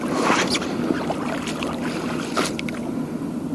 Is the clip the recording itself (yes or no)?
yes